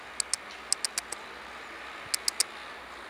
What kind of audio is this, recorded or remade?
recorded